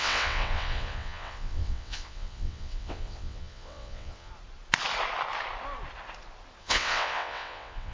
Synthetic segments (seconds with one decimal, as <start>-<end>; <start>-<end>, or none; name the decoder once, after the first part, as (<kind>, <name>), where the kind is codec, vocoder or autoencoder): 0.0-4.3 (vocoder, WaveNeXt); 6.6-7.9